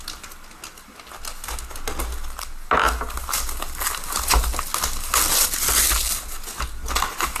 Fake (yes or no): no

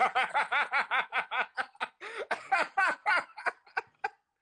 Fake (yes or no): no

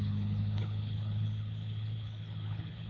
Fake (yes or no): yes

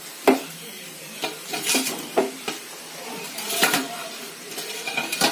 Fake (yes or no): yes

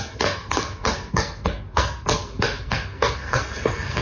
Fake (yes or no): yes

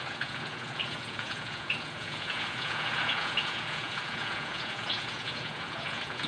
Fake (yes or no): yes